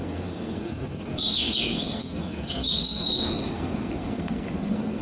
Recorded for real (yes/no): no